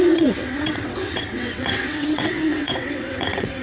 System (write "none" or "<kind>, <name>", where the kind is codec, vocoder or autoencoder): vocoder, WaveNeXt